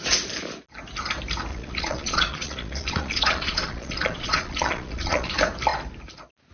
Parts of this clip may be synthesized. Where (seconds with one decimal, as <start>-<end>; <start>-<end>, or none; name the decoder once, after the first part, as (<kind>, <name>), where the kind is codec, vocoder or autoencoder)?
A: 1.5-5.3 (vocoder, Vocos)